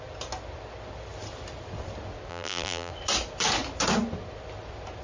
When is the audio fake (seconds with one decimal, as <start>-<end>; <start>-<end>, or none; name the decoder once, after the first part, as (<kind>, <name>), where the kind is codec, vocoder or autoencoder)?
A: 2.3-2.9 (vocoder, BigVGAN v2)